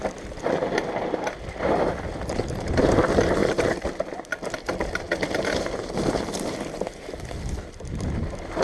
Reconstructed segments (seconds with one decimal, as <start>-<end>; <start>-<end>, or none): none